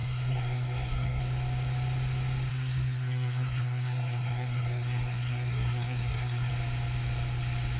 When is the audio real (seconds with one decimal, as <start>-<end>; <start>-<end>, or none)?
1.2-2.5; 6.5-7.8